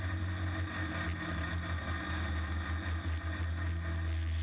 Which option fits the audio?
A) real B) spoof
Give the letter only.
A